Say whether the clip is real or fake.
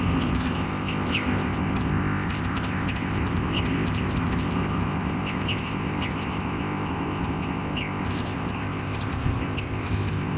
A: fake